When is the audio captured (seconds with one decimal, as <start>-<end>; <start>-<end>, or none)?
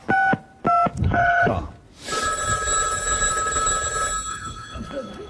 0.0-1.0; 1.5-4.3